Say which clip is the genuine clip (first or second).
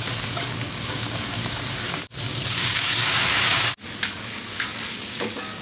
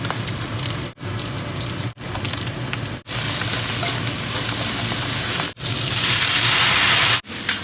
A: second